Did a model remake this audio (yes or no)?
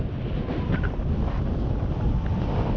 no